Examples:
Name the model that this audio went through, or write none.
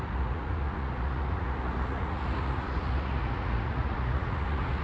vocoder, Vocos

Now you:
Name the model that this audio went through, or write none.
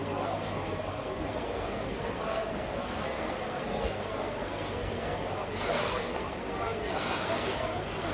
codec, SNAC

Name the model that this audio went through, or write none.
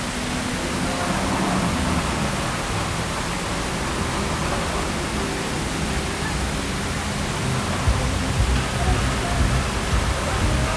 none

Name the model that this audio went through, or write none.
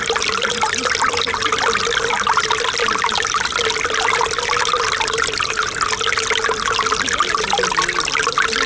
none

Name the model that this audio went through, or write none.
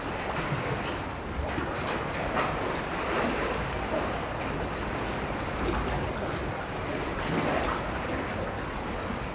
none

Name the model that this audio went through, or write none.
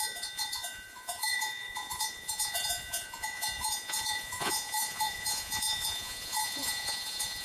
vocoder, Vocos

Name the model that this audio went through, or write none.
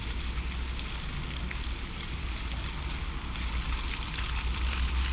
none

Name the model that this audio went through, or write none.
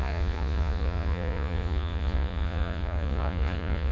vocoder, Vocos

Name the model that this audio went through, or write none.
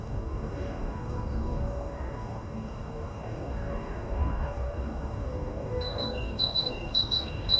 codec, DAC